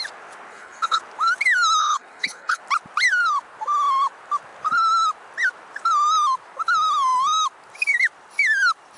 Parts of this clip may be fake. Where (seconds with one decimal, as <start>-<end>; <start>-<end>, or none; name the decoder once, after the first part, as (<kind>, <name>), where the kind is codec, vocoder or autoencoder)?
0.5-1.0 (codec, HILCodec); 1.8-2.6